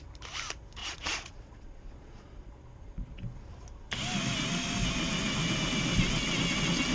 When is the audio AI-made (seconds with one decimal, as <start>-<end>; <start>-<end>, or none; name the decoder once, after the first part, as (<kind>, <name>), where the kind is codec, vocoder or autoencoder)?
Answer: 0.8-3.2 (vocoder, Vocos)